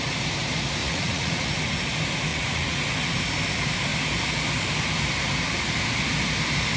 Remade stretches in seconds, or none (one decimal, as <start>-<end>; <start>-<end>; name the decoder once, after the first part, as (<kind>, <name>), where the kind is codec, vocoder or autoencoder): 0.8-1.5 (vocoder, Vocos); 2.3-2.8